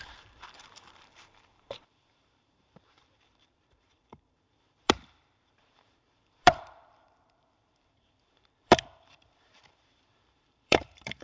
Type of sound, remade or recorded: remade